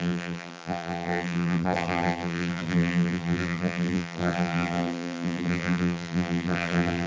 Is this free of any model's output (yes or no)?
no